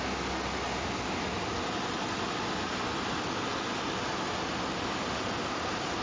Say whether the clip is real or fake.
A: real